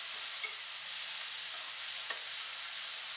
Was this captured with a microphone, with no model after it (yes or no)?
yes